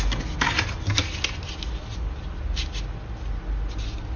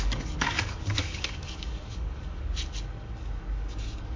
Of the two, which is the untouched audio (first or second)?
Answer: first